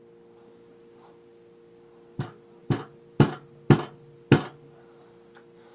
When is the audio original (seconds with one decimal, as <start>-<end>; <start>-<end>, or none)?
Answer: 0.0-5.7